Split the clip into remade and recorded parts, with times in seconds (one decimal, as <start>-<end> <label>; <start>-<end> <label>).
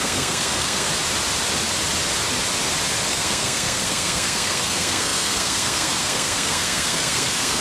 0.0-0.9 remade; 0.9-3.1 recorded; 3.1-7.6 remade